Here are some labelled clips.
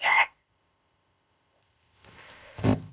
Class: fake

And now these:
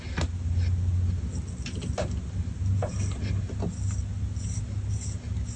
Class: real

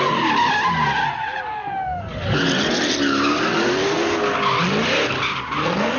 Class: real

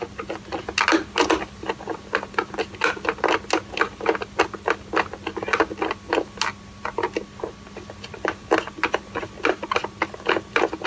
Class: real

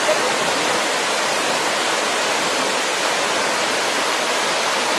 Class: real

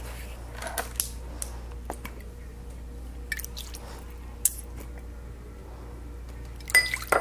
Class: real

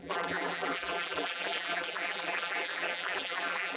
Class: fake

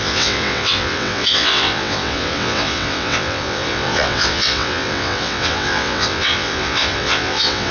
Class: fake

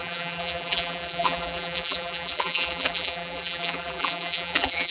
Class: fake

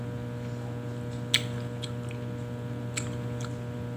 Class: real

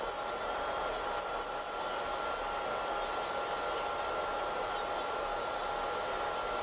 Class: real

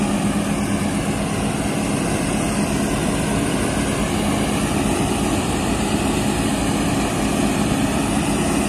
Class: real